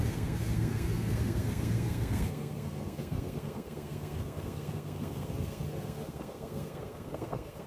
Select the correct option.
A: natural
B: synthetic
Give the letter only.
B